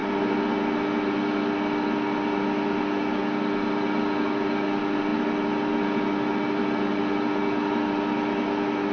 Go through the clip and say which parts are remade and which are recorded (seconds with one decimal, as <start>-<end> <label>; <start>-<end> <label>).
0.0-8.9 recorded